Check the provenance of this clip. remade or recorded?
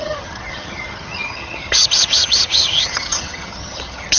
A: remade